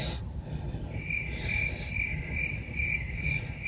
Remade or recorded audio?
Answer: recorded